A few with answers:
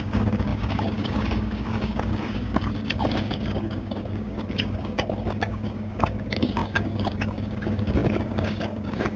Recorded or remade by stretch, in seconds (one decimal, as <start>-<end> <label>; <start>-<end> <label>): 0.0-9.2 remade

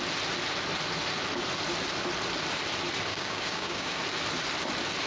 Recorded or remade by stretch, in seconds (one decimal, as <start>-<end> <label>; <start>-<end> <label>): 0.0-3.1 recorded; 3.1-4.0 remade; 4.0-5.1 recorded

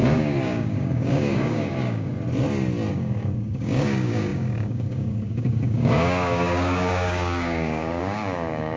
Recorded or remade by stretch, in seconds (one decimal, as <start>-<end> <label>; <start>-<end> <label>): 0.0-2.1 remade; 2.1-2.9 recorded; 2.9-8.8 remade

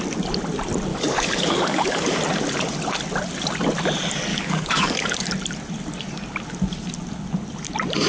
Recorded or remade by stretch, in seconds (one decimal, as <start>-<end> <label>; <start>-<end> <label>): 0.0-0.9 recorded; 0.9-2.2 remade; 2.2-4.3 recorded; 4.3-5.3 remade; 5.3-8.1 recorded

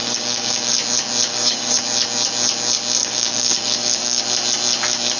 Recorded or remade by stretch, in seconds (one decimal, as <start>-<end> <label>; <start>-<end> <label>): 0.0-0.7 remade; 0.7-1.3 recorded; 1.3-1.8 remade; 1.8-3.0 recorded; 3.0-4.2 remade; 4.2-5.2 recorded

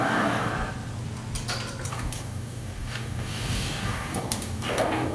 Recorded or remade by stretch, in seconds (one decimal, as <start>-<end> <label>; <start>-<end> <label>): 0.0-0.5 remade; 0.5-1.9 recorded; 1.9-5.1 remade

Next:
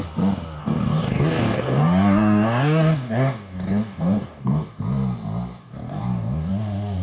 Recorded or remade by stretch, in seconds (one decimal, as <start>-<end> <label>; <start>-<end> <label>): 0.0-0.6 recorded; 0.6-4.8 remade; 4.8-5.6 recorded; 5.6-6.5 remade; 6.5-7.0 recorded